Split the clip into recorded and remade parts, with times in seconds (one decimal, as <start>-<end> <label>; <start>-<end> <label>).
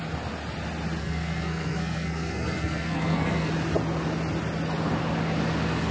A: 0.0-1.0 recorded; 1.0-3.5 remade; 3.5-5.9 recorded